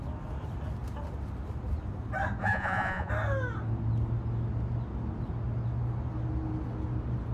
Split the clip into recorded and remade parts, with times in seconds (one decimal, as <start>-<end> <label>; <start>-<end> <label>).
0.0-2.4 recorded; 2.4-3.1 remade; 3.1-7.3 recorded